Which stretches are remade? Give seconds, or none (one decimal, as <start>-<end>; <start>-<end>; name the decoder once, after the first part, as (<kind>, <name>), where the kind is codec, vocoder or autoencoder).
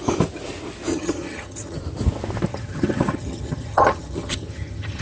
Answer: 0.9-1.8 (vocoder, HiFi-GAN); 2.5-5.0